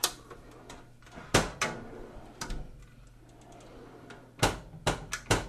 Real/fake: real